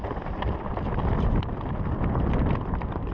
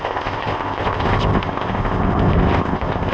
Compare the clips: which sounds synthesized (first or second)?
second